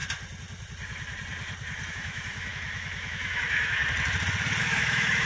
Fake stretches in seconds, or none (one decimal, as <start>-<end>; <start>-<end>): 1.9-3.8; 4.6-5.3